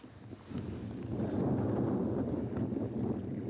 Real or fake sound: real